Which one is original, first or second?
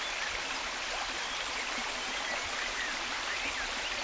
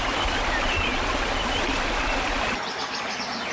second